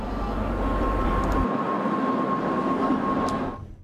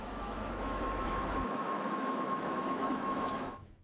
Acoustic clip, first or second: first